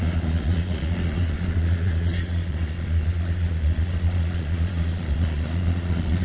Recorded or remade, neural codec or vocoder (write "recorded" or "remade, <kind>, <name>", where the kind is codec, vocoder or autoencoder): remade, vocoder, Vocos